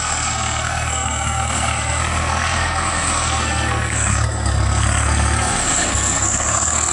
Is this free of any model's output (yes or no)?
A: no